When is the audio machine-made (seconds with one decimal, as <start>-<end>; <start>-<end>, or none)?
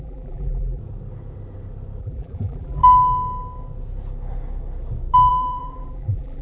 0.0-0.8; 2.0-2.8; 5.3-6.4